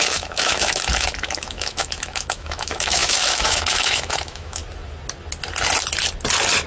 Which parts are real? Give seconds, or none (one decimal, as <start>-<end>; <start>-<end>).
4.6-6.7